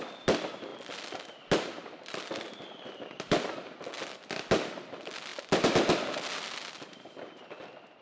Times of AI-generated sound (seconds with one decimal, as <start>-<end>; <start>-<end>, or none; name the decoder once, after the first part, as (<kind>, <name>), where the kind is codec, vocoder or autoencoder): none